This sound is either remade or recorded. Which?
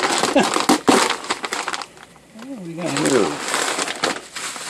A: recorded